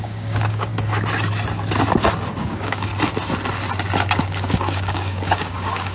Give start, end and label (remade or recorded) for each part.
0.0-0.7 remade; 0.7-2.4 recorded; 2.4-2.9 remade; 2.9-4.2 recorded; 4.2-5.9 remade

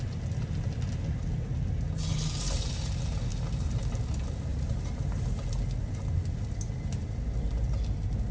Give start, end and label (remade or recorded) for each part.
0.0-2.1 recorded; 2.1-2.8 remade; 2.8-3.3 recorded; 3.3-3.9 remade; 3.9-4.5 recorded; 4.5-5.5 remade; 5.5-8.3 recorded

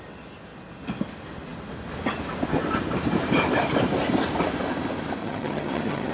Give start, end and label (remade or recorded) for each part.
0.0-5.2 recorded; 5.2-6.1 remade

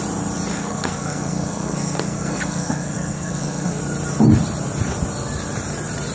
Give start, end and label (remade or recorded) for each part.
0.0-0.5 recorded; 0.5-3.8 remade; 3.8-6.1 recorded

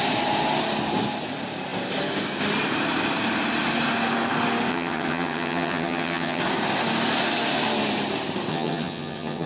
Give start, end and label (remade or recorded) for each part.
0.0-4.7 recorded; 4.7-6.4 remade; 6.4-8.5 recorded; 8.5-9.5 remade

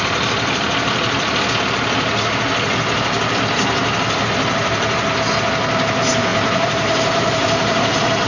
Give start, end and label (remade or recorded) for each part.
0.0-6.3 recorded; 6.3-7.9 remade; 7.9-8.3 recorded

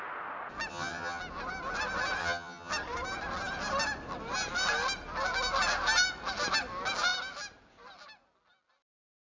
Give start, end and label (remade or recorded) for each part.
0.0-0.7 recorded; 0.7-1.2 remade; 1.2-2.2 recorded; 2.2-2.7 remade; 2.7-9.3 recorded